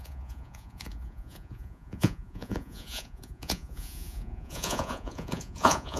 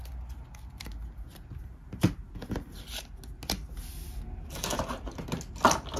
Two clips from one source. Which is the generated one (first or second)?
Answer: first